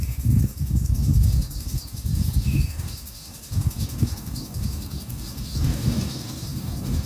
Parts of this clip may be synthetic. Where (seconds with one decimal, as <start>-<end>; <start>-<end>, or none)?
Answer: 0.0-7.1